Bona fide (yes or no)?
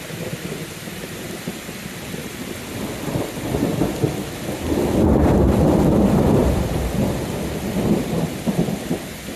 yes